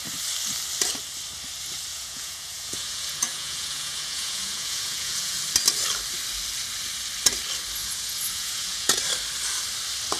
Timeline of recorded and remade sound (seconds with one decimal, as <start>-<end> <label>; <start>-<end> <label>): 0.0-1.9 recorded; 1.9-5.4 remade; 5.4-7.8 recorded; 7.8-9.0 remade; 9.0-10.2 recorded